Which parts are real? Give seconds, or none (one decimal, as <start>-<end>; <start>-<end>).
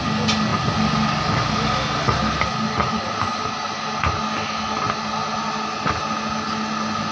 0.0-7.1